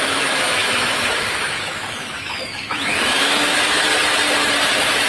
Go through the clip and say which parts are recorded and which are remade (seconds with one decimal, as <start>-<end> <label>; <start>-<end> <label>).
0.0-3.9 remade; 3.9-5.1 recorded